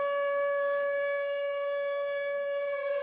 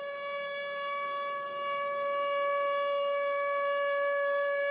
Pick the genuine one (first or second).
second